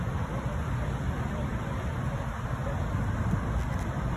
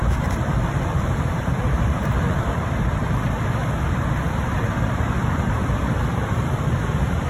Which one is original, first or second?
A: first